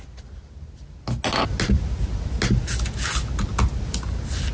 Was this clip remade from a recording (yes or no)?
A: no